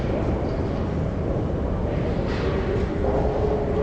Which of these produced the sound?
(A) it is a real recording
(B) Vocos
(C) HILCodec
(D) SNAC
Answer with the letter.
A